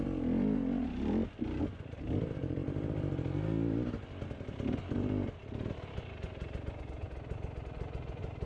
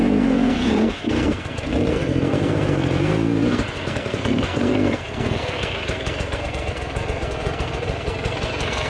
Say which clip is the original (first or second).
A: first